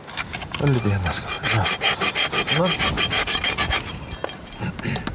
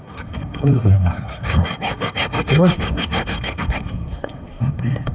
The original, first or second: first